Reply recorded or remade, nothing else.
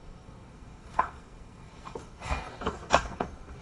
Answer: remade